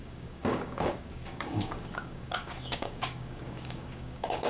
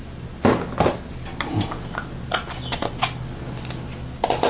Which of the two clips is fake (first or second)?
first